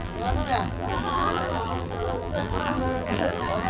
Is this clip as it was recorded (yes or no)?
no